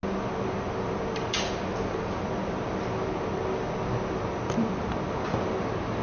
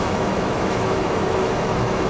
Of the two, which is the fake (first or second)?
second